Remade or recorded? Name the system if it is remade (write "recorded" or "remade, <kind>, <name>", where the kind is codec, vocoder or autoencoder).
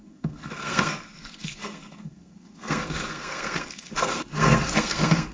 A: remade, codec, SNAC